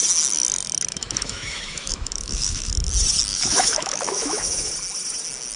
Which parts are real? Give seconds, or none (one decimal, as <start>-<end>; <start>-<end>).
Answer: 0.0-0.9; 2.7-3.3; 4.7-5.6